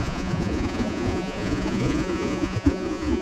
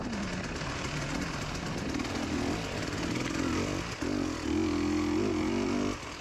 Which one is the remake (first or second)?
first